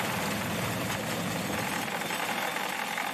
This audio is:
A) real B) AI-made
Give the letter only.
A